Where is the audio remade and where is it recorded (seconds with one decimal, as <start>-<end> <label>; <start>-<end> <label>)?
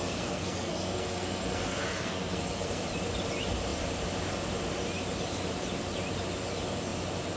0.0-2.8 remade; 2.8-7.4 recorded